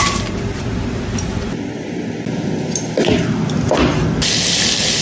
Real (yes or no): yes